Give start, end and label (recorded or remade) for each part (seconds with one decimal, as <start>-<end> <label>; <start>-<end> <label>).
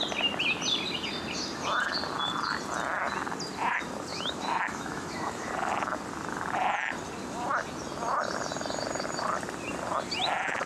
0.0-4.1 recorded; 4.1-5.5 remade; 5.5-10.7 recorded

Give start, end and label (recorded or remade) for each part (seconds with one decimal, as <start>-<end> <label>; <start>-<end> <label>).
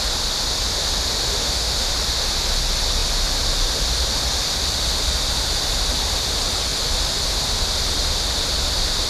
0.0-1.4 recorded; 1.4-1.9 remade; 1.9-9.1 recorded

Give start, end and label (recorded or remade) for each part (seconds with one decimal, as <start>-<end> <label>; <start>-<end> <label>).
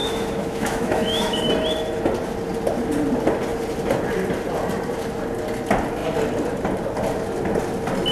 0.0-1.5 remade; 1.5-8.1 recorded